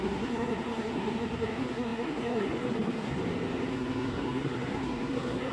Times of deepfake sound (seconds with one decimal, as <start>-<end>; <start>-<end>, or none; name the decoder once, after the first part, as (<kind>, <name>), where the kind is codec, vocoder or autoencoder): 0.0-3.2 (codec, SNAC); 3.7-5.5